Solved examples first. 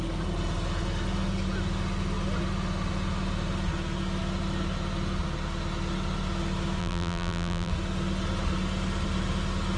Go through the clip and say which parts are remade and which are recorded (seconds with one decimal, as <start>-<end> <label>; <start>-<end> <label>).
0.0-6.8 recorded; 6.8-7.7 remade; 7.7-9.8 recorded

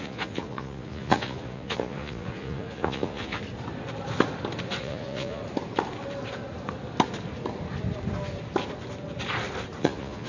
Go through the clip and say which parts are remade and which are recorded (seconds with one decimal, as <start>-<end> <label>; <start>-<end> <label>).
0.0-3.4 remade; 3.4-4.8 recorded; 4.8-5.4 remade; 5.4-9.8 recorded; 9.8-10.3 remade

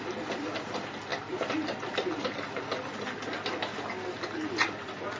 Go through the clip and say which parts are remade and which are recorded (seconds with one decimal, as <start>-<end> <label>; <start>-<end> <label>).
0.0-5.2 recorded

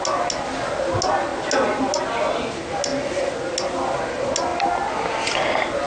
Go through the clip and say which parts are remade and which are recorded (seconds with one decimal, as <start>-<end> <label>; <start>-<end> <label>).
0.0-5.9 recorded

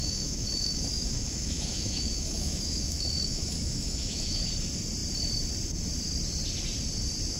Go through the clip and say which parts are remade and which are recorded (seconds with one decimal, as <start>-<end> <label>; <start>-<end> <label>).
0.0-4.4 remade; 4.4-7.4 recorded